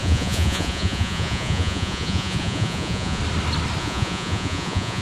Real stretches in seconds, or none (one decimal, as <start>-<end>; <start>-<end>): 3.2-3.8